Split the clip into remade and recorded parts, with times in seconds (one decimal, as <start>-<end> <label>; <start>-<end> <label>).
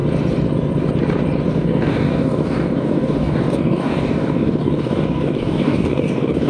0.0-1.5 recorded; 1.5-6.5 remade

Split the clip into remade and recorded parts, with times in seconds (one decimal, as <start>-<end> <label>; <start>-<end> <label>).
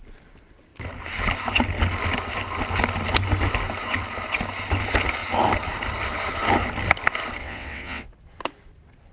0.0-7.4 recorded; 7.4-8.1 remade; 8.1-9.1 recorded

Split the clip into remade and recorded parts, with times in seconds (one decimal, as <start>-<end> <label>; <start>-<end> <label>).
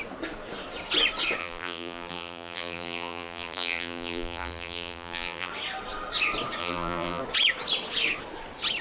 0.0-1.4 recorded; 1.4-5.5 remade; 5.5-6.6 recorded; 6.6-7.2 remade; 7.2-8.8 recorded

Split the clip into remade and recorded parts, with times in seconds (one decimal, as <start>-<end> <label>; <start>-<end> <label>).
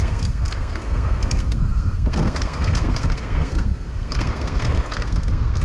0.0-5.6 remade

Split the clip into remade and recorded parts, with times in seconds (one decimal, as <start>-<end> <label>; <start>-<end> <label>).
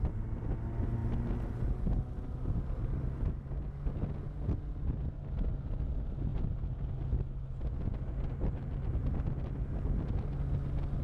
0.0-11.0 recorded